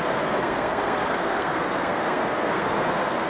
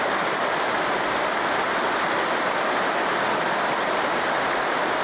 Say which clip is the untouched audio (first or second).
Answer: second